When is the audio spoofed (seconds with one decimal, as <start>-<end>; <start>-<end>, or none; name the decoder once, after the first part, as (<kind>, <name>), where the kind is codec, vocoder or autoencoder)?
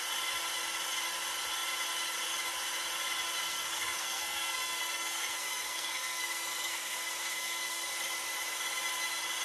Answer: 3.4-7.9 (codec, SNAC)